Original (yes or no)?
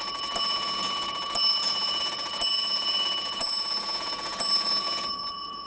no